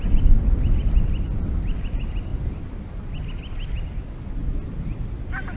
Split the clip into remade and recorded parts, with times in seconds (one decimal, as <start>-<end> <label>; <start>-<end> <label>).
0.0-5.6 recorded